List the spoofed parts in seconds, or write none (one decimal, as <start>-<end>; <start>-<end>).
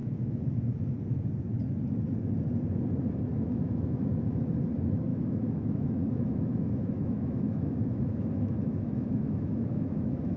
0.0-0.7; 3.3-4.4; 5.1-10.4